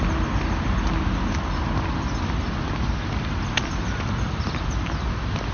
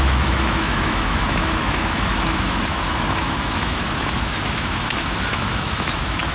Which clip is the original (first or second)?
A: first